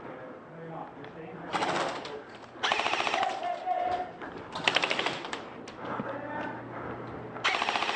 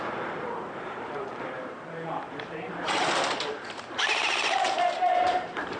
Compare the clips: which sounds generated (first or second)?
second